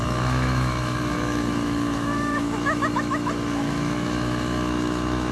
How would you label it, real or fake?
fake